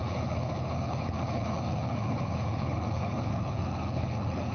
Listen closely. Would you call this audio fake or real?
fake